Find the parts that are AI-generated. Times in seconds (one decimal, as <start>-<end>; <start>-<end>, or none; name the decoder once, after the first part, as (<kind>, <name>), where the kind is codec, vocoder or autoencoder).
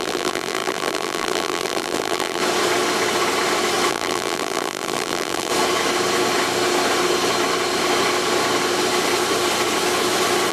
0.0-2.4 (vocoder, BigVGAN v2); 3.9-5.5